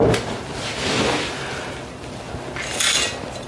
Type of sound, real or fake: real